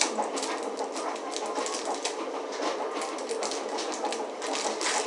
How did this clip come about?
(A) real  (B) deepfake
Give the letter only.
A